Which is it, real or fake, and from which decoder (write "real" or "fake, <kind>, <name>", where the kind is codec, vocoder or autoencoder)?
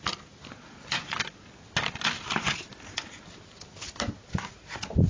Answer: real